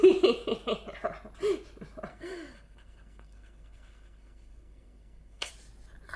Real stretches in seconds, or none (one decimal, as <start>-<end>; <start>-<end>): 0.0-2.1; 5.5-6.2